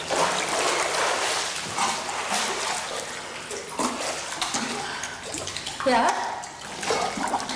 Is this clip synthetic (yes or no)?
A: no